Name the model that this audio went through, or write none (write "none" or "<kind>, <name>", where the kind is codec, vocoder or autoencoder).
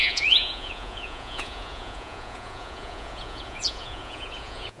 vocoder, Vocos